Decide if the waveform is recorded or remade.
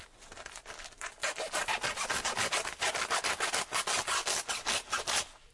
recorded